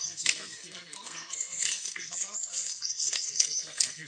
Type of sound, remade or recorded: remade